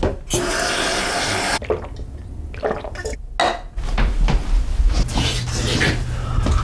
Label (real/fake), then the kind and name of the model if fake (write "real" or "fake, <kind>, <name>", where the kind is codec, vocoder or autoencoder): real